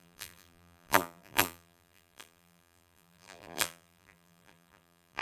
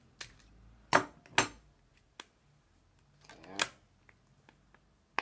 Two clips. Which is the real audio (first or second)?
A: second